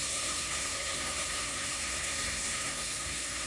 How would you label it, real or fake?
fake